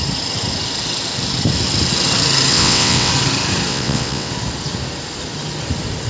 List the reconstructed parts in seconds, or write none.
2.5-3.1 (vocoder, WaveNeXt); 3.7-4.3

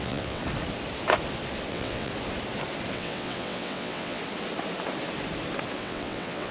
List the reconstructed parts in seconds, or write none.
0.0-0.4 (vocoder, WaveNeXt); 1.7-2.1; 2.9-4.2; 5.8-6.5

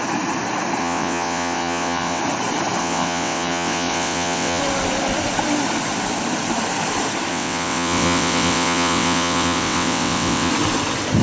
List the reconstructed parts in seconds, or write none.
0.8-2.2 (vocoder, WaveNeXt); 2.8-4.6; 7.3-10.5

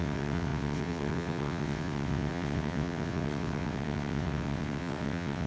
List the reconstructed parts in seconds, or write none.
0.0-5.5 (vocoder, WaveNeXt)

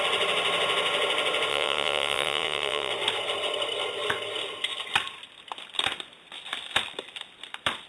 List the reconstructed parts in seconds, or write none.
1.5-2.9 (vocoder, WaveNeXt)

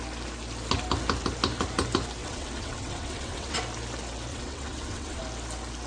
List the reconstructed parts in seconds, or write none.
2.2-3.6 (vocoder, WaveNeXt); 4.3-5.2

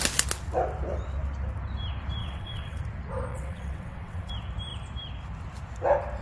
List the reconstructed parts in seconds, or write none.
2.2-2.8 (vocoder, WaveNeXt); 3.3-4.3

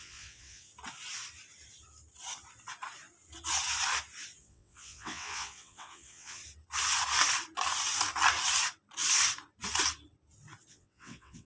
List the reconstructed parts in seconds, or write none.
0.0-0.7 (vocoder, WaveNeXt); 4.4-6.4; 10.7-11.4